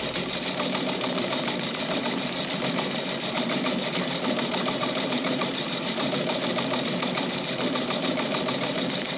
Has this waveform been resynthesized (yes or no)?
yes